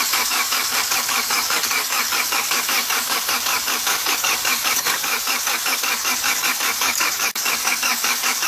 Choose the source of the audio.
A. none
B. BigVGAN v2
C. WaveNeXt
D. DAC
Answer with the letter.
D